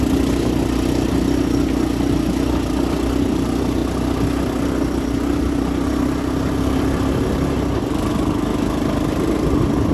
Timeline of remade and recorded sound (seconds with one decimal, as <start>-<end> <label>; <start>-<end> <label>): 0.0-9.9 recorded